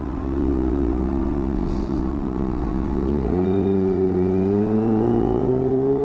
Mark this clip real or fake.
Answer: fake